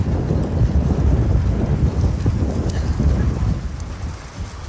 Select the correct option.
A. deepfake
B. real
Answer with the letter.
B